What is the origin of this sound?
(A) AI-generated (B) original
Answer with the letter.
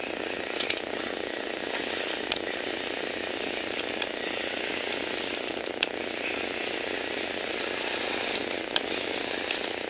B